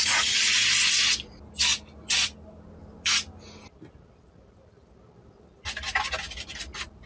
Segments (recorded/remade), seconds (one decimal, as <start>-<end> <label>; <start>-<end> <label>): 0.0-0.6 remade; 0.6-7.1 recorded